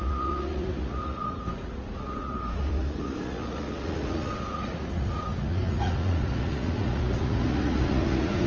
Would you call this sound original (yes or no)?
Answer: no